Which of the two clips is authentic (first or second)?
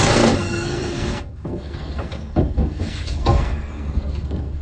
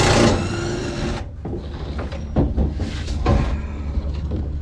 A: second